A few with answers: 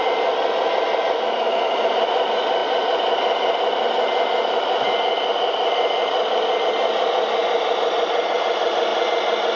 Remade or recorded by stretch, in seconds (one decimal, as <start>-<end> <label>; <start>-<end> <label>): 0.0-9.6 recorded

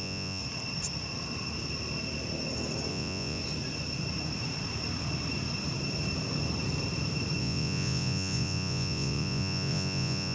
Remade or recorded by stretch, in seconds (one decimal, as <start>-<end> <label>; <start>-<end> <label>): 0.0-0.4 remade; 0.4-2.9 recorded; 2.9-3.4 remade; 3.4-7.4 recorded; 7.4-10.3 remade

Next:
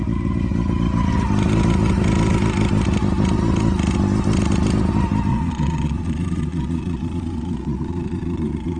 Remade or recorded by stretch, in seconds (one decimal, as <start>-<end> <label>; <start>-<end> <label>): 0.0-5.3 recorded; 5.3-8.8 remade

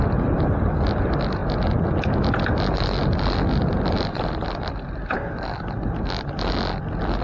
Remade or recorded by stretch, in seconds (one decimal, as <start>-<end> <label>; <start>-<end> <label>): 0.0-7.2 recorded